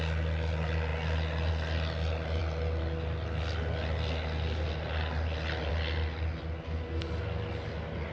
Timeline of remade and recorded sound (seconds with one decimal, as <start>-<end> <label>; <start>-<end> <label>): 0.0-8.1 recorded